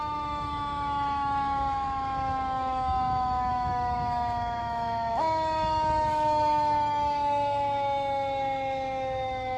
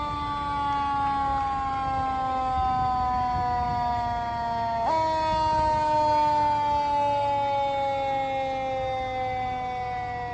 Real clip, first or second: second